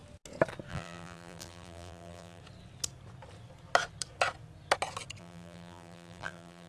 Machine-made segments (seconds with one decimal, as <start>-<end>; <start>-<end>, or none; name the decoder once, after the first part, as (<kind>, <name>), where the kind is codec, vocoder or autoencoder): 0.7-2.4 (vocoder, BigVGAN v2); 5.2-6.7